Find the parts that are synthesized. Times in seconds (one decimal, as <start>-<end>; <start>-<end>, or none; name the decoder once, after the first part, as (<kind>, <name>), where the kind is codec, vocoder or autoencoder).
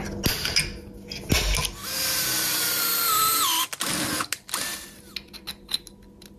1.8-2.8 (vocoder, BigVGAN v2)